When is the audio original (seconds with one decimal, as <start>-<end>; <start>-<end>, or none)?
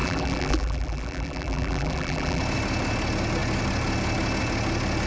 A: 2.4-5.1